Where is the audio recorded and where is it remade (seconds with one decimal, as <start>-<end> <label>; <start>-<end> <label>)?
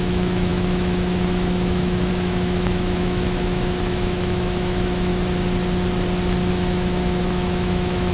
0.0-5.1 remade; 5.1-6.5 recorded; 6.5-8.1 remade